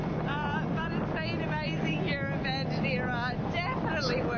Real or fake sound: real